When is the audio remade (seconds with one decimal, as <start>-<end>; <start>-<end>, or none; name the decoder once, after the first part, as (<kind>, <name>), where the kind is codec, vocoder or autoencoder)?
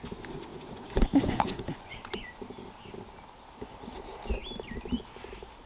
0.5-2.3 (vocoder, Vocos)